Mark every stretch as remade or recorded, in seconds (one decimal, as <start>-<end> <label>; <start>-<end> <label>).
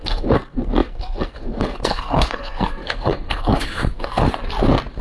0.0-4.2 remade; 4.2-5.0 recorded